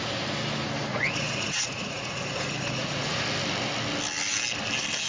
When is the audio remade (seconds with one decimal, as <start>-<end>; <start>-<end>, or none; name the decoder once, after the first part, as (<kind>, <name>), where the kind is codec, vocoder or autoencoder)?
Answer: 0.9-3.2 (vocoder, Vocos)